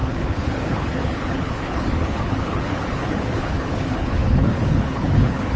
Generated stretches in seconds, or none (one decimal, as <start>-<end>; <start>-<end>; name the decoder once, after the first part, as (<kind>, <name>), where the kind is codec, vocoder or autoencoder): 0.0-5.6 (codec, HILCodec)